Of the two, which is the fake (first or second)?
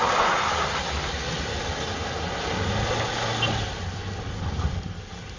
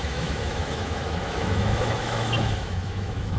second